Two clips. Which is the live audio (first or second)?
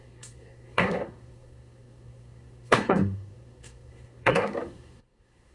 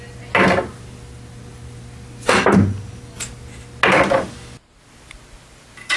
second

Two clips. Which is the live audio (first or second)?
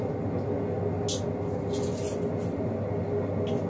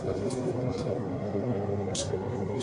first